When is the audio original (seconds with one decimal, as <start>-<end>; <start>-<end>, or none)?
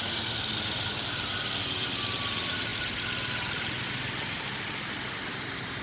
0.0-5.8